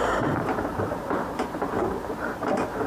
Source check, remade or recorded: remade